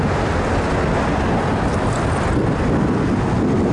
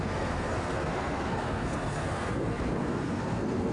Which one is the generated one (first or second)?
second